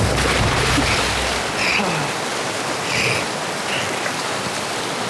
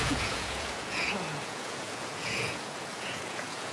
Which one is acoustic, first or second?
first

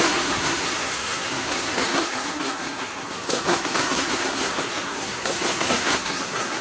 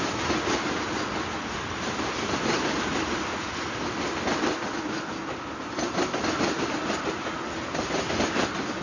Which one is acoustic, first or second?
second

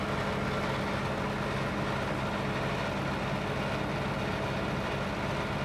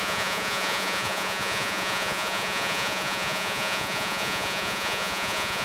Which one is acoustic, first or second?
first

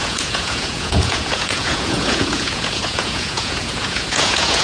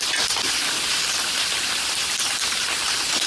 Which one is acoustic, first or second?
second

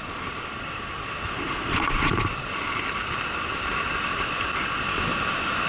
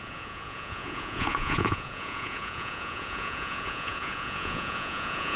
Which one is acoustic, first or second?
first